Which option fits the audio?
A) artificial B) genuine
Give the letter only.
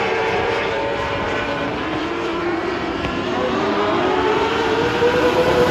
A